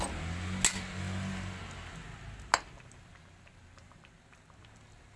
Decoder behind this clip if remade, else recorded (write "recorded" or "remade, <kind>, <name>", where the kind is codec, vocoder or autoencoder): recorded